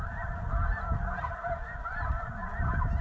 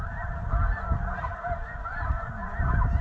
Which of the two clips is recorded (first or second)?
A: second